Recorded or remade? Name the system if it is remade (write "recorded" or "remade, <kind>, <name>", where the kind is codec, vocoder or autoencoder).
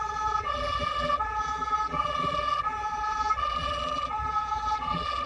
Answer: remade, vocoder, BigVGAN v2